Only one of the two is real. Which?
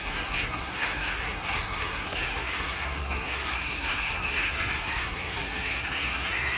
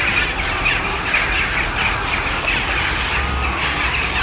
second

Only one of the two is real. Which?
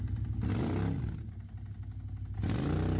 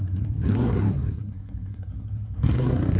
first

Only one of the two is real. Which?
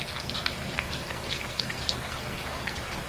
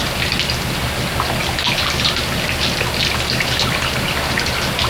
second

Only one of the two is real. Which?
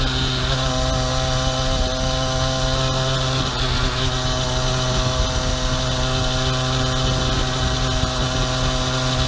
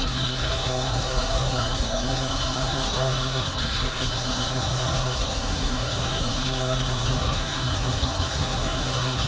first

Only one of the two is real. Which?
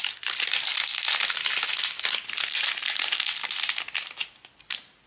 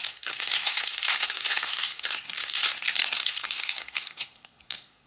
first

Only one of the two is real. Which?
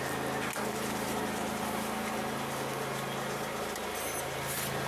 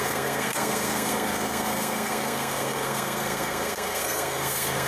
first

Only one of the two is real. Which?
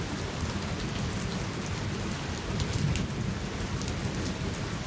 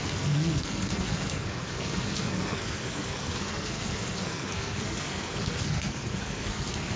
first